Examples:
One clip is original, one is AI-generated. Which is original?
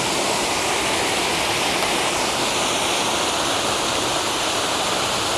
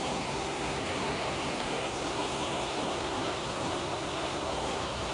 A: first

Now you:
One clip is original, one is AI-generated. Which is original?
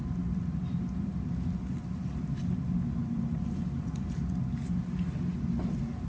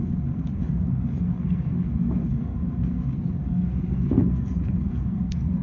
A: first